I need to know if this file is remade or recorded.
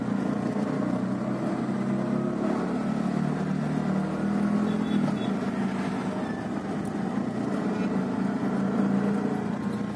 recorded